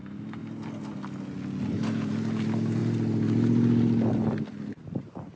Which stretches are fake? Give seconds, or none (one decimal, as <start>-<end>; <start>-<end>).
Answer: none